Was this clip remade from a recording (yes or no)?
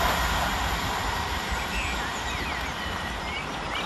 no